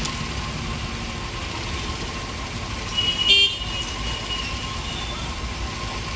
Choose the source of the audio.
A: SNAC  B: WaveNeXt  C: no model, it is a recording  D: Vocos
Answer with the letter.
C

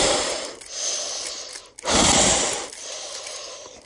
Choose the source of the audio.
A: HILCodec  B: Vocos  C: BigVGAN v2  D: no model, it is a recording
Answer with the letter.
D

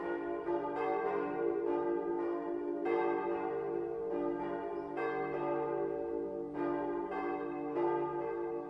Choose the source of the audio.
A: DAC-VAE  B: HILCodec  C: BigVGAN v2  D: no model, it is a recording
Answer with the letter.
D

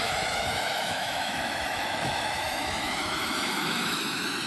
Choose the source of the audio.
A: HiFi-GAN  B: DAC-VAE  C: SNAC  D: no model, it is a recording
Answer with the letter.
B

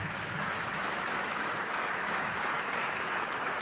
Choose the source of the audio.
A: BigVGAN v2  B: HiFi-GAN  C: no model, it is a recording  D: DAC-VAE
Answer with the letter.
D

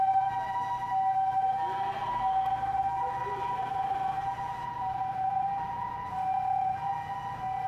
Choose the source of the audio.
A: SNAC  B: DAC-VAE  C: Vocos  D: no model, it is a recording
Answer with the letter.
D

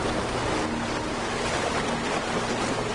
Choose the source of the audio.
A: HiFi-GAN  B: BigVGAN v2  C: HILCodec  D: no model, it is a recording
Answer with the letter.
D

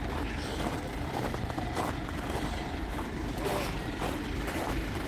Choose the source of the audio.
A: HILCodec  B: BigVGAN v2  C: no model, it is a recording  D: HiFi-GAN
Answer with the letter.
C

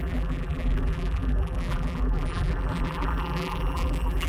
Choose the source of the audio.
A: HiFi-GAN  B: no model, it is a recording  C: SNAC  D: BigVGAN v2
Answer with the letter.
D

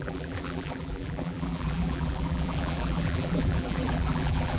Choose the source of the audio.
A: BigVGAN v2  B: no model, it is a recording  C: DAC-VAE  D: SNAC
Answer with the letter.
A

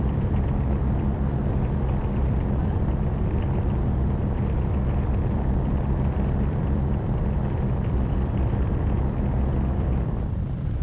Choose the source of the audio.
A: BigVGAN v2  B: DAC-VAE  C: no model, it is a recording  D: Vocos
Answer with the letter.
A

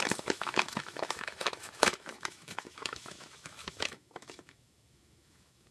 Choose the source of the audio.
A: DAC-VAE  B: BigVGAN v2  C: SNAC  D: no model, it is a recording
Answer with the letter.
A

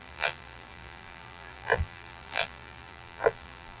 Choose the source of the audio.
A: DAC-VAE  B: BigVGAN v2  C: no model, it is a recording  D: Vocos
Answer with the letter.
B